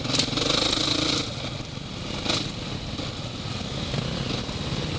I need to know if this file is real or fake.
real